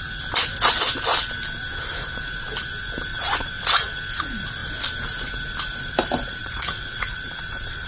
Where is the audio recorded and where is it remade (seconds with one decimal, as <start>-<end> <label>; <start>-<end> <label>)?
0.0-3.1 recorded; 3.1-3.9 remade; 3.9-6.4 recorded; 6.4-7.9 remade